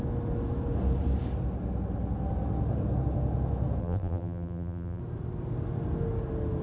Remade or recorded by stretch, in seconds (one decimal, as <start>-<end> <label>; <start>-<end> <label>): 0.0-3.8 recorded; 3.8-5.0 remade; 5.0-6.6 recorded